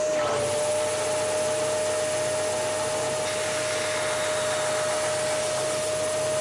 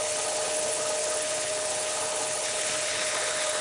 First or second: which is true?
first